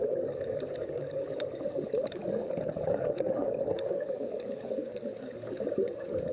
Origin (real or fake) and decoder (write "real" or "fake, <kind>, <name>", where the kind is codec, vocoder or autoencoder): fake, codec, DAC